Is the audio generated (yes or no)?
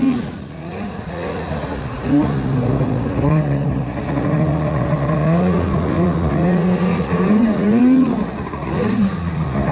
yes